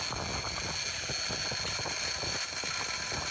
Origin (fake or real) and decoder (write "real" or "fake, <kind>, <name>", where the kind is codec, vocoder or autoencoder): real